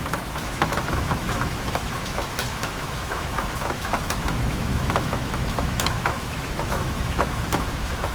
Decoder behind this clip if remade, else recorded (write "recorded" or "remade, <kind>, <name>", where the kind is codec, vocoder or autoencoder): remade, autoencoder, DAC-VAE